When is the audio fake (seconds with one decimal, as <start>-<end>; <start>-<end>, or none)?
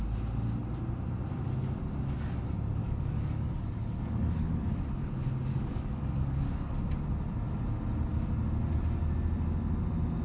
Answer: 2.8-4.7; 5.5-6.8